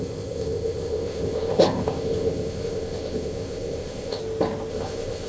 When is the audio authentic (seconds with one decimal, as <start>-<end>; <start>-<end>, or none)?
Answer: 4.2-4.7